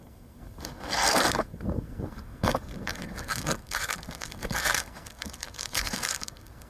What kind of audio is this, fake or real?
fake